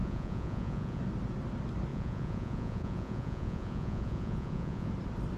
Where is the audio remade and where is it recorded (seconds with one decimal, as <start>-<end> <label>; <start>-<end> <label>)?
0.0-1.0 remade; 1.0-1.9 recorded; 1.9-4.9 remade; 4.9-5.4 recorded